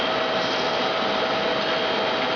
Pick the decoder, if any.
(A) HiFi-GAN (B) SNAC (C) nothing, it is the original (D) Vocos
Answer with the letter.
C